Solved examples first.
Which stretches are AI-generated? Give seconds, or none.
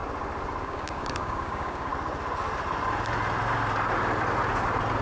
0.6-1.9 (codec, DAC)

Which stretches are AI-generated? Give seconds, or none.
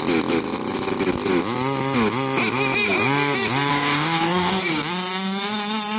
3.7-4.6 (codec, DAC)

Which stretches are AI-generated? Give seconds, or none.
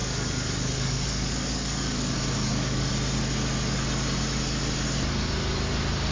0.0-2.9 (codec, DAC)